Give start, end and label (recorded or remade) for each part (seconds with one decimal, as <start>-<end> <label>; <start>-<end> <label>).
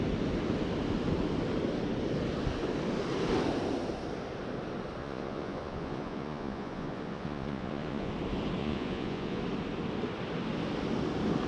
0.0-5.0 recorded; 5.0-8.1 remade; 8.1-8.6 recorded; 8.6-9.4 remade; 9.4-11.5 recorded